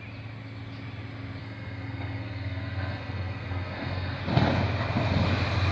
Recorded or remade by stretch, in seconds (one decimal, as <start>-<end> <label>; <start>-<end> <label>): 0.0-1.4 recorded; 1.4-4.2 remade; 4.2-5.7 recorded

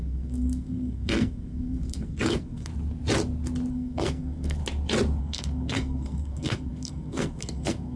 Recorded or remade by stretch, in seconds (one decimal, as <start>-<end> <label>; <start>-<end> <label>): 0.0-2.7 remade; 2.7-3.7 recorded; 3.7-4.6 remade; 4.6-5.2 recorded; 5.2-8.0 remade

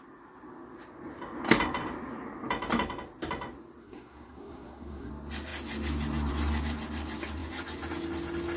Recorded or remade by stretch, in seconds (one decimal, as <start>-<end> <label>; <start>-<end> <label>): 0.0-3.8 recorded; 3.8-5.1 remade; 5.1-8.6 recorded

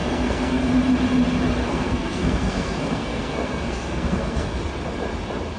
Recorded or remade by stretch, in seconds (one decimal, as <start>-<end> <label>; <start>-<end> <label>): 0.0-0.6 remade; 0.6-1.6 recorded; 1.6-4.6 remade; 4.6-5.6 recorded

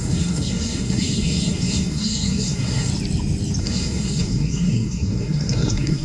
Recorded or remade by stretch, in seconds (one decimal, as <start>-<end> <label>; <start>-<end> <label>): 0.0-2.9 remade; 2.9-3.6 recorded; 3.6-6.0 remade

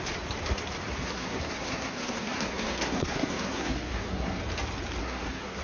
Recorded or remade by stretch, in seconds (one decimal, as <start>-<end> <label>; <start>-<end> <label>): 0.0-1.0 recorded; 1.0-4.4 remade; 4.4-5.0 recorded; 5.0-5.6 remade